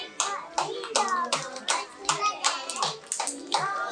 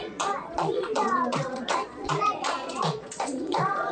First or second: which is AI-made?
second